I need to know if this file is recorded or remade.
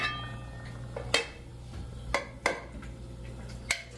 recorded